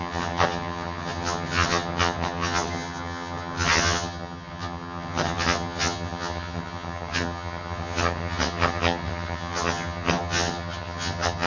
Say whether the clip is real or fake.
fake